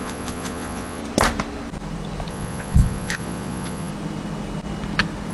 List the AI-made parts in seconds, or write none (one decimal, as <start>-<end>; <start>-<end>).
0.0-1.0; 2.3-3.9